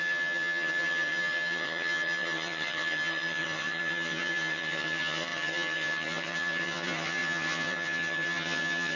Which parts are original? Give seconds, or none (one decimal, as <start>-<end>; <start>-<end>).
none